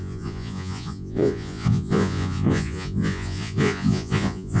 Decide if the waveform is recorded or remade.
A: remade